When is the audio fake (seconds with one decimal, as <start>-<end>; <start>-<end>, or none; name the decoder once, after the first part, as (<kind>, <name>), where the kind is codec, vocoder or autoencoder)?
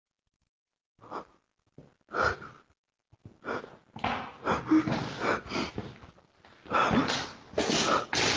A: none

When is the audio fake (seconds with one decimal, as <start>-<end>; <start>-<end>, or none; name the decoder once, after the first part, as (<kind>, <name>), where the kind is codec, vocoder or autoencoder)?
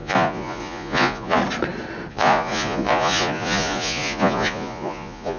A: 0.0-1.4 (vocoder, Vocos); 2.1-5.4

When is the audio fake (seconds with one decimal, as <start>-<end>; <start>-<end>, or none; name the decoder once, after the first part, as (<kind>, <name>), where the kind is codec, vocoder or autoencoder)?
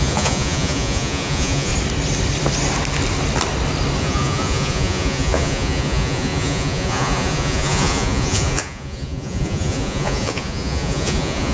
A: 0.0-1.7 (vocoder, Vocos); 4.0-11.5